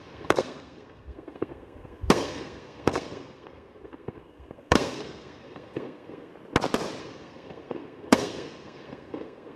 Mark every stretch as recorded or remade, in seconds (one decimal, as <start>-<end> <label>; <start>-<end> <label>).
0.0-6.3 remade; 6.3-7.0 recorded; 7.0-9.6 remade